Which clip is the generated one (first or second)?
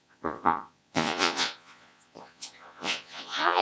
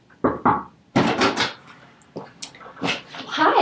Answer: first